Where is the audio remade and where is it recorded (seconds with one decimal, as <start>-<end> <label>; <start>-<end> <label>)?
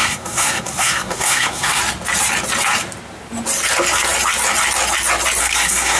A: 0.0-1.8 remade; 1.8-5.4 recorded; 5.4-6.0 remade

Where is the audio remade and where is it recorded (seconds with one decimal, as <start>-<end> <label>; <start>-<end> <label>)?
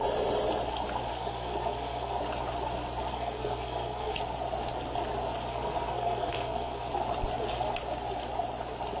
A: 0.0-1.1 recorded; 1.1-2.2 remade; 2.2-3.1 recorded; 3.1-4.2 remade; 4.2-5.5 recorded; 5.5-6.9 remade; 6.9-9.0 recorded